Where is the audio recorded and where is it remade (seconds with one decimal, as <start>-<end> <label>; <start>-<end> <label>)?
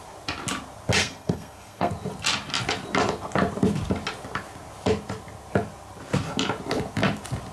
0.0-1.0 recorded; 1.0-1.9 remade; 1.9-7.5 recorded